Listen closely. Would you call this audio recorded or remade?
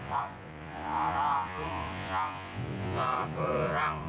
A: remade